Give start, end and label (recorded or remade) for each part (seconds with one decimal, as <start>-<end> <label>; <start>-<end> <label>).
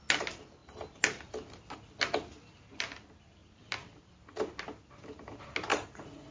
0.0-5.7 recorded; 5.7-6.3 remade